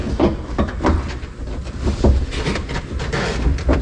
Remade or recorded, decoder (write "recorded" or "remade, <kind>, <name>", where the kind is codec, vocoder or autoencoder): recorded